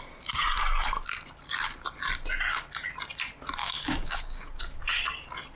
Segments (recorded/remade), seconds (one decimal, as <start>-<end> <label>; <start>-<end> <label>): 0.0-3.6 recorded; 3.6-4.6 remade; 4.6-5.5 recorded